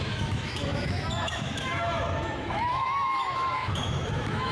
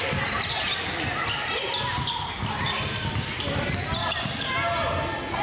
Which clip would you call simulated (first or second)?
first